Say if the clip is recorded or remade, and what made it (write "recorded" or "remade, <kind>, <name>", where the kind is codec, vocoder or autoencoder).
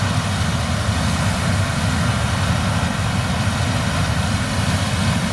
recorded